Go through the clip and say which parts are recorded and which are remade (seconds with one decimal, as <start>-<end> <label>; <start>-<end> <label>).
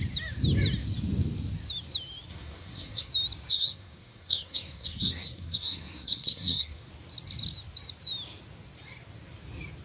0.0-2.3 recorded; 2.3-3.1 remade; 3.1-3.5 recorded; 3.5-6.9 remade; 6.9-9.8 recorded